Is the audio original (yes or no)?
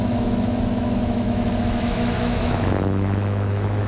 no